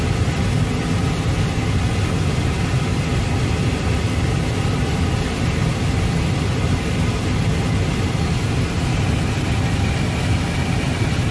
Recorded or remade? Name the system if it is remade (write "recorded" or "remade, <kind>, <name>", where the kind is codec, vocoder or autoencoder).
recorded